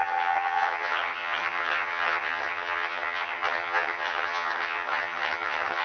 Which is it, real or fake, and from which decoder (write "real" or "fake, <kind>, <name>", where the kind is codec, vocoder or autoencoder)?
fake, vocoder, HiFi-GAN